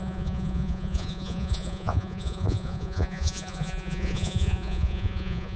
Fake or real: fake